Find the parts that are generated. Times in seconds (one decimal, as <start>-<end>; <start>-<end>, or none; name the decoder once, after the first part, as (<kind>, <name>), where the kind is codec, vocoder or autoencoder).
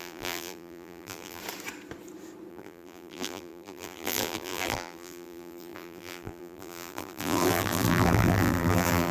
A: 0.0-1.4 (vocoder, BigVGAN v2); 2.5-9.1